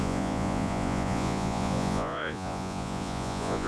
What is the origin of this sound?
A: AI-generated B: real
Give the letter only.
A